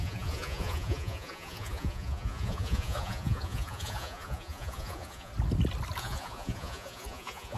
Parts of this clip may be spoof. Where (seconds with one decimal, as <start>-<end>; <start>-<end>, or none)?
0.0-5.3; 6.0-7.6